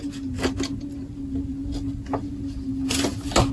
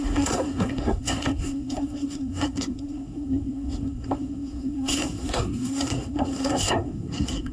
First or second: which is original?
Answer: first